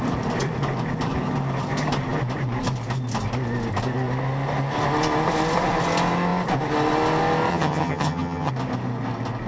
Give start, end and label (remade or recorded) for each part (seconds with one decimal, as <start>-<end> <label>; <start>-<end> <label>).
0.0-7.5 recorded; 7.5-8.5 remade; 8.5-9.5 recorded